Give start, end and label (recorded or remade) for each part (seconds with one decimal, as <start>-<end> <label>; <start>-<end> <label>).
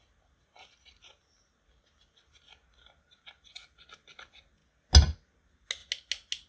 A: 0.0-6.5 recorded